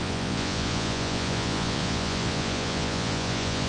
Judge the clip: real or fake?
fake